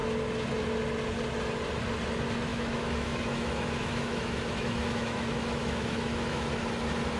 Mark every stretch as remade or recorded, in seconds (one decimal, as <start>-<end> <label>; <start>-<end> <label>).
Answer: 0.0-2.5 recorded; 2.5-6.5 remade; 6.5-7.2 recorded